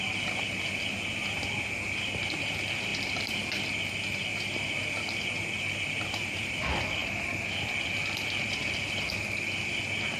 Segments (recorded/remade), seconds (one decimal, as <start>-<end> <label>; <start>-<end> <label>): 0.0-2.9 recorded; 2.9-3.9 remade; 3.9-10.2 recorded